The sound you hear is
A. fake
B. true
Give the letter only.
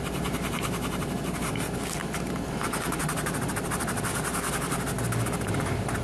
B